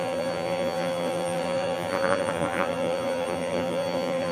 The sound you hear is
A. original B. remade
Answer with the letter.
B